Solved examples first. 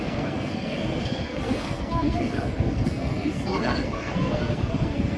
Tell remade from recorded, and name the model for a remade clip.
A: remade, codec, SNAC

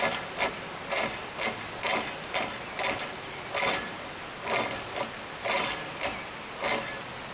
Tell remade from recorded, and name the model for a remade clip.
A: recorded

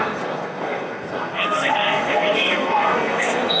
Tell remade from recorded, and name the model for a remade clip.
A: remade, codec, SNAC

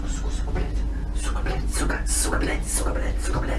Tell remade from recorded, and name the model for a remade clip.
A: recorded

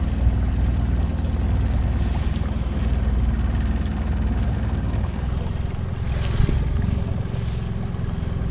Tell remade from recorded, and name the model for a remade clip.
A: recorded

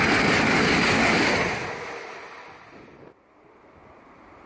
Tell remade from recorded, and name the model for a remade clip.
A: recorded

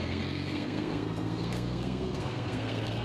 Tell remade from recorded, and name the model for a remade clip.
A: remade, codec, SNAC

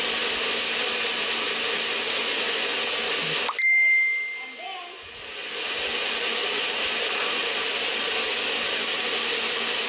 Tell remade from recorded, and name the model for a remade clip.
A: recorded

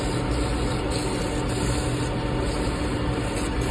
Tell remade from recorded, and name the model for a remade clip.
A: recorded